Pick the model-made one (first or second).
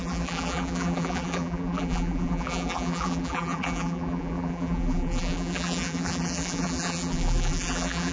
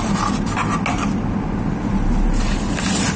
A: first